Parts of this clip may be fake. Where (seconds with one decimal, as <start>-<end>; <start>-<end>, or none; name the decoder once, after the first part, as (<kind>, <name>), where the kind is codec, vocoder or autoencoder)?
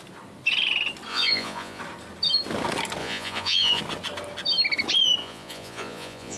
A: 1.1-1.8 (vocoder, Vocos); 3.0-3.8; 5.2-6.4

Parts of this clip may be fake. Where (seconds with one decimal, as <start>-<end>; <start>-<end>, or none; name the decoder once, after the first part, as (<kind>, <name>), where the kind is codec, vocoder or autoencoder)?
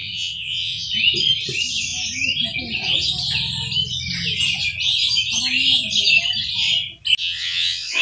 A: 0.0-0.9 (vocoder, WaveNeXt); 7.2-8.0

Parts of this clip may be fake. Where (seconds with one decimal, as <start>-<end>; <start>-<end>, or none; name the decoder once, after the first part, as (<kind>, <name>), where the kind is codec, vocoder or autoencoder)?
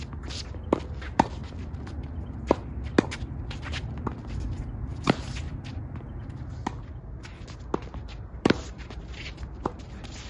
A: 8.0-9.0 (vocoder, BigVGAN v2)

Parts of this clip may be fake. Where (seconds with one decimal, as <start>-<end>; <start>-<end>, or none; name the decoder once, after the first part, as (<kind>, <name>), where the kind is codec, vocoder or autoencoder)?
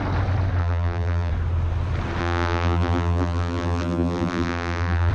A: 0.6-1.3 (vocoder, BigVGAN v2); 2.2-5.1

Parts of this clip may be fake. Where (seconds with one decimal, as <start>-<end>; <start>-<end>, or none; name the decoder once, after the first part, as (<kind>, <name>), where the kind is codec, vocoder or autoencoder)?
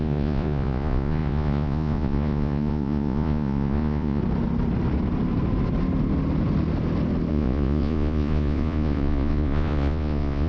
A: 0.0-4.2 (vocoder, Vocos); 7.3-10.5